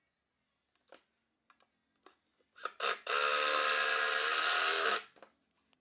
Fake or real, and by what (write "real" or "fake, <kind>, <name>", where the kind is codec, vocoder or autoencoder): real